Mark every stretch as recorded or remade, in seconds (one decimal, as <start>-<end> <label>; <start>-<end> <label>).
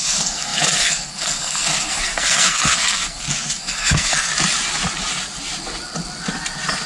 0.0-4.3 remade; 4.3-6.9 recorded